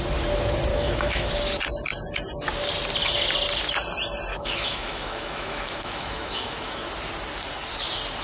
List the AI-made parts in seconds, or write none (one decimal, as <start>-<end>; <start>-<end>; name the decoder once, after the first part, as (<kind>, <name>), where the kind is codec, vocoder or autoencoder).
0.7-1.3 (autoencoder, DAC-VAE); 4.3-6.9